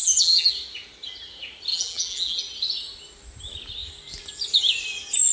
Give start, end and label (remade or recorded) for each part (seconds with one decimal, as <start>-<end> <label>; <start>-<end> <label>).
0.0-0.5 remade; 0.5-1.7 recorded; 1.7-2.4 remade; 2.4-5.3 recorded